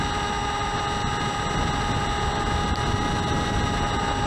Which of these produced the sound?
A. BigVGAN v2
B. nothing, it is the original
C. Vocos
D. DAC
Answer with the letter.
B